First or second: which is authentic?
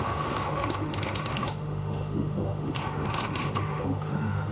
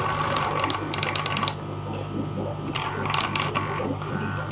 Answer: second